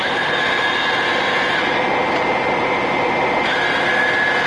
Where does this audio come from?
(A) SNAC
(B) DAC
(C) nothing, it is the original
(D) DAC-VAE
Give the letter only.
C